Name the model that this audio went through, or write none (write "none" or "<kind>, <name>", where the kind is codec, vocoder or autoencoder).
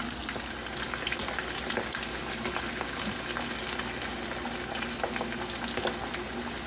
none